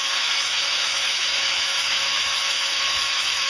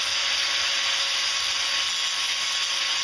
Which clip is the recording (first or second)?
second